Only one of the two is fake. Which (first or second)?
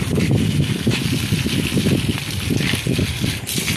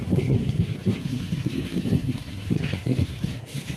second